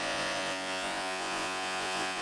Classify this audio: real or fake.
fake